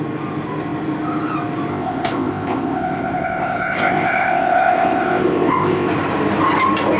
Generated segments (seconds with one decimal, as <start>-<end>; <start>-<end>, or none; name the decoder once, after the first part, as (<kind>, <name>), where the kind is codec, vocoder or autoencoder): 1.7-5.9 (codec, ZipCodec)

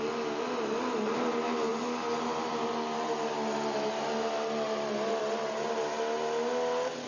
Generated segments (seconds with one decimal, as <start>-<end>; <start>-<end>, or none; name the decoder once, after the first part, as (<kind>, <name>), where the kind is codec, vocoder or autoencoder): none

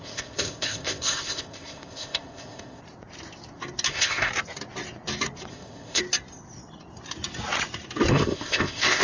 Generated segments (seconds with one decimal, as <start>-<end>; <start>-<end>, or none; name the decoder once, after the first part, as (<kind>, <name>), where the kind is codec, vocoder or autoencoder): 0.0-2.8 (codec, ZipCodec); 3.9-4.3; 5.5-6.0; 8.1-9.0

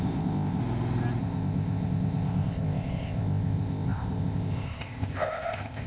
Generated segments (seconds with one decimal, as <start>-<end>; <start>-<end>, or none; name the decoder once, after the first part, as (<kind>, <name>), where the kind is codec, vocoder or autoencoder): 0.0-0.6 (codec, ZipCodec); 1.2-5.9